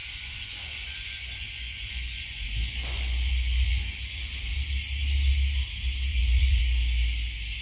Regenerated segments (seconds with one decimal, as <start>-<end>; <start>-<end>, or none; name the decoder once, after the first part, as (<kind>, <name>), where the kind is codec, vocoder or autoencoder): 0.0-4.4 (vocoder, Vocos); 6.1-6.6